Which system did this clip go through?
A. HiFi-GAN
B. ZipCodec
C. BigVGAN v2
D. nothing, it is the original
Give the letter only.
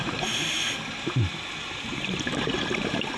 C